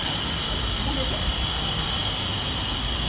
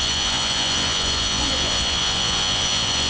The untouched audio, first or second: first